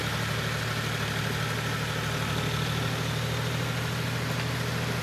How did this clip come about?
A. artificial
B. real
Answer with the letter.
B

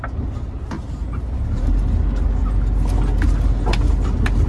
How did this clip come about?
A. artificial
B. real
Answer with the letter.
B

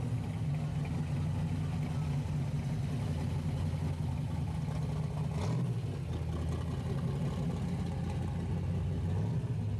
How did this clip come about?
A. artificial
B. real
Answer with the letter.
B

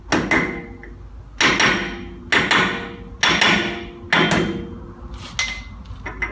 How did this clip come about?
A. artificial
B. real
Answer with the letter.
B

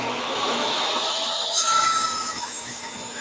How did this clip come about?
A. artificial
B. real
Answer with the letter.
A